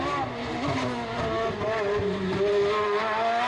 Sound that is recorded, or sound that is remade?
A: recorded